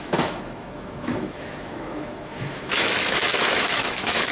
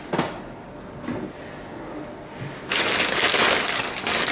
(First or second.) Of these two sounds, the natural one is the second